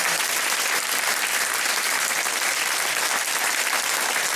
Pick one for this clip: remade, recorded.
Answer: recorded